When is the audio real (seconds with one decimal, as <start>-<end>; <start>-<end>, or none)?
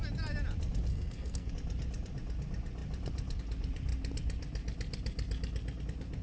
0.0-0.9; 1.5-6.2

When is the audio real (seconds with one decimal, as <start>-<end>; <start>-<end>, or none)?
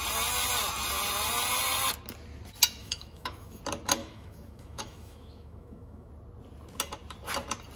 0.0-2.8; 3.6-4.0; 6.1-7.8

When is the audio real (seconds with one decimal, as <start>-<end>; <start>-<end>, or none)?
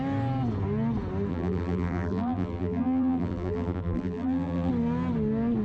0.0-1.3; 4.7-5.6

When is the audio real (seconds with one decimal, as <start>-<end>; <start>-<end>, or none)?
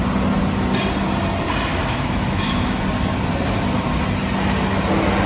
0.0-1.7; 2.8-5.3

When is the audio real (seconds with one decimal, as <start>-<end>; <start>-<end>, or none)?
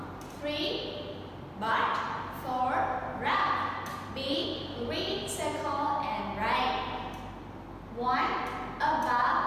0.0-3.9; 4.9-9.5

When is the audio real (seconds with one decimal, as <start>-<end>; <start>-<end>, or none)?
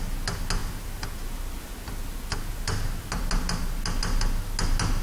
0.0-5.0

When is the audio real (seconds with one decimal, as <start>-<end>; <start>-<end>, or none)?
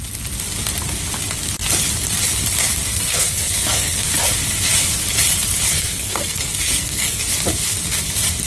0.0-2.9; 4.1-5.7; 7.2-8.5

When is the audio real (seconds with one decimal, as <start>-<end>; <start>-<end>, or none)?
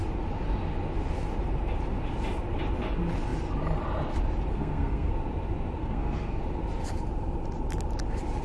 0.0-4.5; 5.1-5.8; 6.4-8.4